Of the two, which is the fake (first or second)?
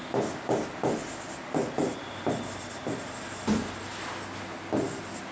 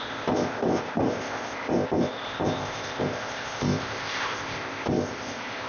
second